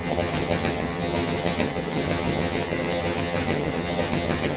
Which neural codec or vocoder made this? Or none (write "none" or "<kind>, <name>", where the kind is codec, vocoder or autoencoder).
vocoder, HiFi-GAN